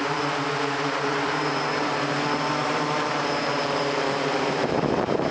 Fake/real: fake